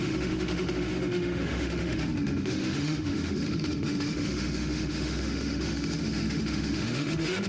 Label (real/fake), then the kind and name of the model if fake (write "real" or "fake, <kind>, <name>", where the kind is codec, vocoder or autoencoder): fake, autoencoder, DAC-VAE